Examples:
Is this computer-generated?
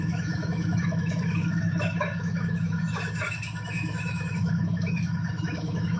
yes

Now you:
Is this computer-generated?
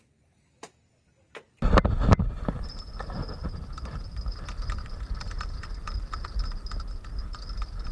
no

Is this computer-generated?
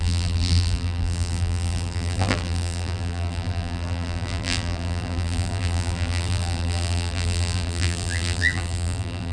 yes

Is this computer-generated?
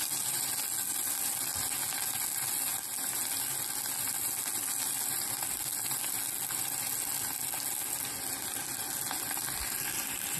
no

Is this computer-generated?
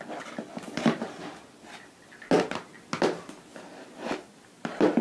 no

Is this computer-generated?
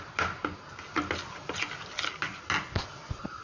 no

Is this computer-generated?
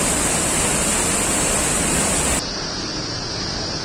no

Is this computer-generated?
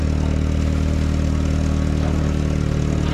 no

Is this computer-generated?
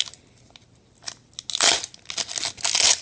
no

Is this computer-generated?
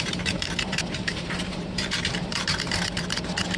yes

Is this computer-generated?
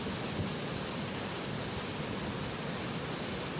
no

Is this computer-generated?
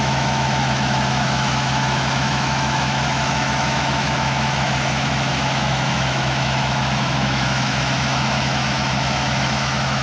yes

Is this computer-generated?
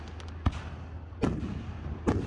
no